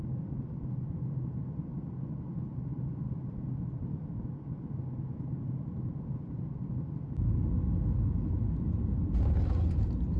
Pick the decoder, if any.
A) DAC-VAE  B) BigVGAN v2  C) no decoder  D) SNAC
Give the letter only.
C